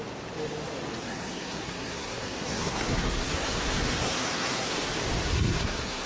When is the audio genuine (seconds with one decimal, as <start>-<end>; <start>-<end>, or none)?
0.0-1.0; 4.7-5.2